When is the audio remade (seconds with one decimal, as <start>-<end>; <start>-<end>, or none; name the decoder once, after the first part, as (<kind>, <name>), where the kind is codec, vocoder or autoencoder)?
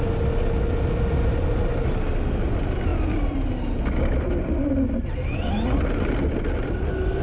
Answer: none